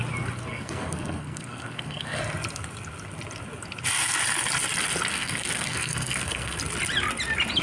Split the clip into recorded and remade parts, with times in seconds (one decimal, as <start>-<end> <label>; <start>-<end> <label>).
0.0-0.5 recorded; 0.5-2.2 remade; 2.2-5.1 recorded; 5.1-6.6 remade; 6.6-7.6 recorded